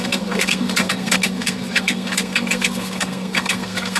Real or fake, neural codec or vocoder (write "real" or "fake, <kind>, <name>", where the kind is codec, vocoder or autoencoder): fake, codec, SNAC